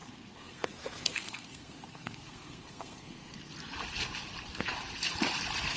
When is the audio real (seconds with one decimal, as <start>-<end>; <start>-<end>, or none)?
3.5-5.8